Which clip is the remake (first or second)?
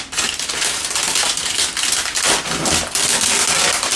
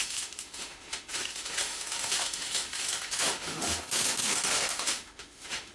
second